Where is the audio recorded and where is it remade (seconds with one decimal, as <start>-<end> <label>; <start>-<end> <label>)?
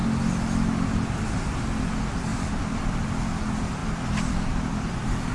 0.0-2.3 recorded; 2.3-3.2 remade; 3.2-5.3 recorded